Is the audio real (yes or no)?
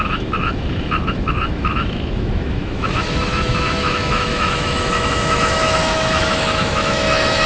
no